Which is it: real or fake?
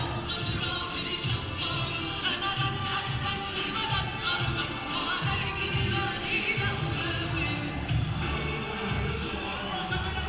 real